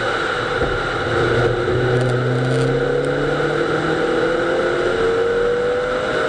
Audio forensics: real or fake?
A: real